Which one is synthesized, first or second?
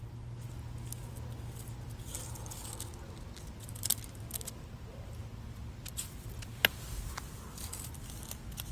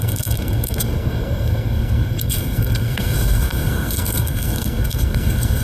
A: second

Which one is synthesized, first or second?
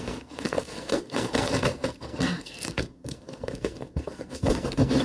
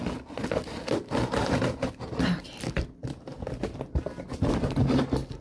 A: first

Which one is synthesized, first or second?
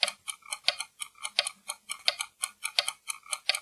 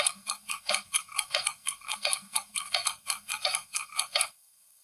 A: second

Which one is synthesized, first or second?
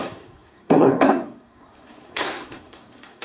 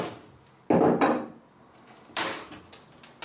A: first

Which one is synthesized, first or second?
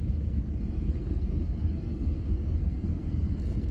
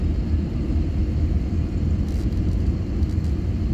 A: first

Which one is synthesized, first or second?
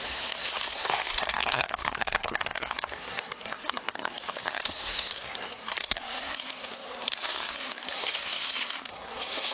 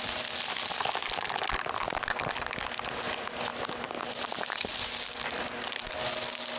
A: first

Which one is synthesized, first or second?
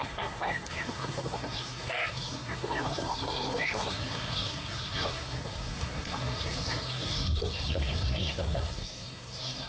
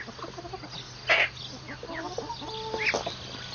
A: first